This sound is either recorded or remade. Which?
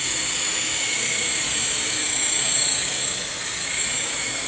remade